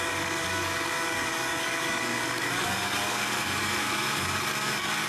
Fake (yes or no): yes